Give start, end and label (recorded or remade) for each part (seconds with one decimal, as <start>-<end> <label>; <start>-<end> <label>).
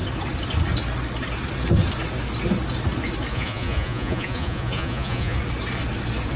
0.0-3.3 recorded; 3.3-5.4 remade; 5.4-6.4 recorded